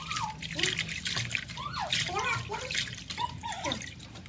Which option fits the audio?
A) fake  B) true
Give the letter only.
B